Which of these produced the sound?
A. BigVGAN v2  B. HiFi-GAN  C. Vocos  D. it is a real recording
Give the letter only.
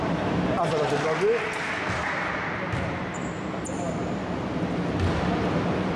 D